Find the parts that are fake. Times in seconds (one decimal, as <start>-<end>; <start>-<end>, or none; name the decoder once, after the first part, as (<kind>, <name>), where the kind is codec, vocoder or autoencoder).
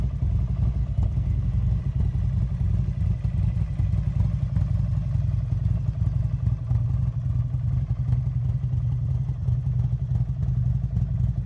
0.8-1.8 (codec, SNAC)